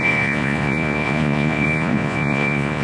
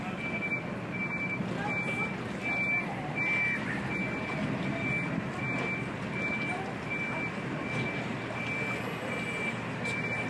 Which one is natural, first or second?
second